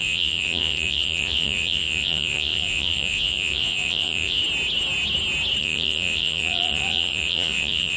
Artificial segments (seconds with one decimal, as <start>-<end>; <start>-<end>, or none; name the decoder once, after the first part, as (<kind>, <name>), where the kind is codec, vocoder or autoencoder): 0.0-4.4 (vocoder, Vocos); 5.6-8.0